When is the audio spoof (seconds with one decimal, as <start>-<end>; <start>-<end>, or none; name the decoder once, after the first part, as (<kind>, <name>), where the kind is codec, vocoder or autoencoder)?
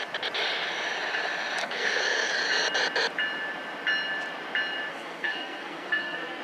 1.6-2.3 (codec, SNAC); 4.9-6.4